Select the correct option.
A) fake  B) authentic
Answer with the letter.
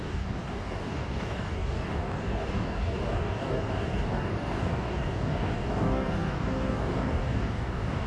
A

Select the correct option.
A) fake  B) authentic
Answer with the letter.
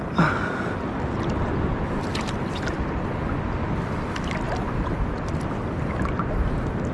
B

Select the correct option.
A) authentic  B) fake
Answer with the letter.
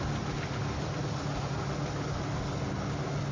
A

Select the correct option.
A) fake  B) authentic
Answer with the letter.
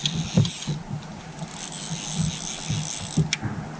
B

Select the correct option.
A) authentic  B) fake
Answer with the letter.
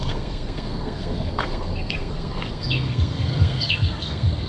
B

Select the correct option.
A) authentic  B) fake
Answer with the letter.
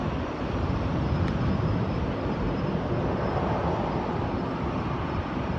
A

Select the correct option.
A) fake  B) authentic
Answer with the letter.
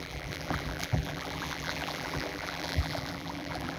A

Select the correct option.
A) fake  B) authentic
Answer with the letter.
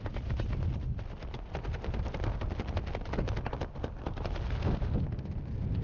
B